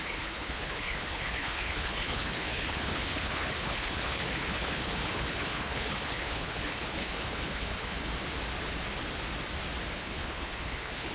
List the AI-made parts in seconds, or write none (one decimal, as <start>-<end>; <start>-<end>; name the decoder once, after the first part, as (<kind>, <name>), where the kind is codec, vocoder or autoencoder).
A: 0.0-8.1 (codec, HILCodec); 9.9-11.1